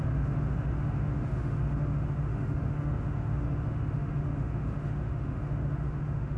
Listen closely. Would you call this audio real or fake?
fake